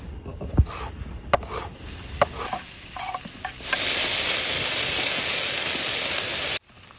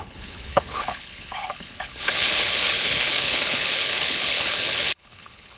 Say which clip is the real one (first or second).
first